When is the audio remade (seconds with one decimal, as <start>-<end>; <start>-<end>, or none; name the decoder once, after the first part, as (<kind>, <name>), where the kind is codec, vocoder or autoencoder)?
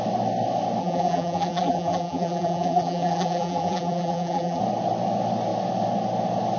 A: 0.8-4.6 (vocoder, BigVGAN v2)